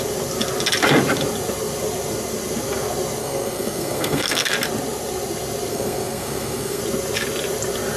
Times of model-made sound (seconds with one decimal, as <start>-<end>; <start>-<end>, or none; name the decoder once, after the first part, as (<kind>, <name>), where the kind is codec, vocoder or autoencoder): 3.2-4.5 (codec, SNAC); 5.7-6.8